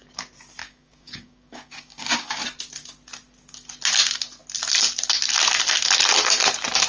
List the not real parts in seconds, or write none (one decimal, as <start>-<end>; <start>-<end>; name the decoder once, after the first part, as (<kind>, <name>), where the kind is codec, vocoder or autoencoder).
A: 0.6-2.4 (codec, DAC)